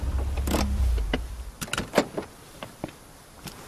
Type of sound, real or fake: real